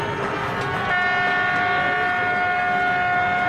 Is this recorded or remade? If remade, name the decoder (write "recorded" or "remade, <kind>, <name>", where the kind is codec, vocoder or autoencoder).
recorded